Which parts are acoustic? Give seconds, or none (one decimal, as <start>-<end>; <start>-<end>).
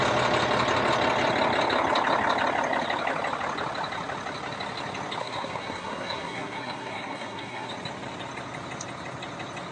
0.0-5.2; 7.7-9.7